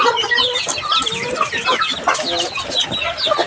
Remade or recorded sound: recorded